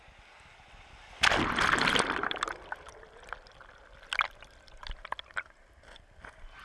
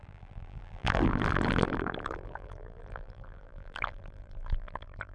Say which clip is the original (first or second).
first